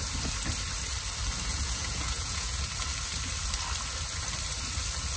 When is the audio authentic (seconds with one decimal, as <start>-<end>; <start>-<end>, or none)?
0.0-1.5; 2.6-5.2